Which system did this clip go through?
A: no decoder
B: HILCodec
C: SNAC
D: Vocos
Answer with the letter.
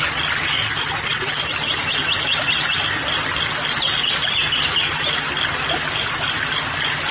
A